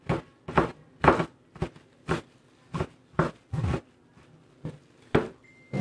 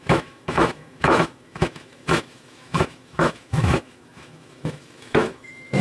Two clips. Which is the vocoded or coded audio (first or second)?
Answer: second